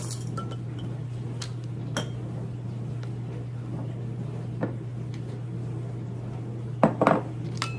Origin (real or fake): real